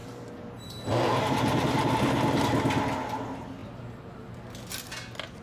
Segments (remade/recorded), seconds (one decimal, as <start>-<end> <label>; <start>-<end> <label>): 0.0-1.9 remade; 1.9-5.4 recorded